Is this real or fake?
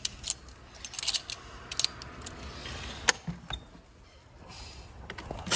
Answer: real